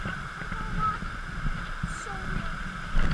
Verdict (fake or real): real